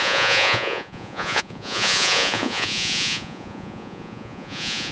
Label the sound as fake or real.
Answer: fake